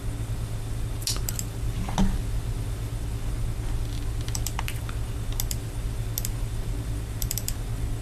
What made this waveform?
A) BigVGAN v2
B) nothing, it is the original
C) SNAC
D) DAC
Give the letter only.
B